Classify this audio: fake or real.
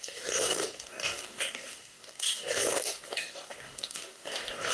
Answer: fake